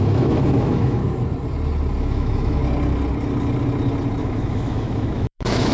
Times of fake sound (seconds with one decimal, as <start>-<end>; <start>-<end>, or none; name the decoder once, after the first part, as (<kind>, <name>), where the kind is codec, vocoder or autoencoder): 0.0-1.0 (autoencoder, DAC-VAE); 2.0-2.6; 4.2-5.7